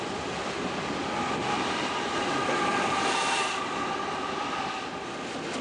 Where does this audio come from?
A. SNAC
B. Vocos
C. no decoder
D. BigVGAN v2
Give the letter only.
C